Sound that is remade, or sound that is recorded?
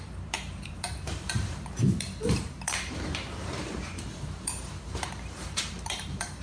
remade